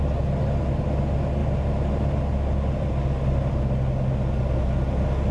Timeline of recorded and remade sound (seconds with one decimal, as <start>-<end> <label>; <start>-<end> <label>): 0.0-1.4 recorded; 1.4-1.9 remade; 1.9-5.3 recorded